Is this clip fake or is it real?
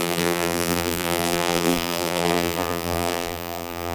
fake